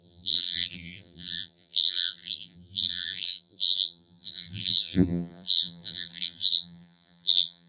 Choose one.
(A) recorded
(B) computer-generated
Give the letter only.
B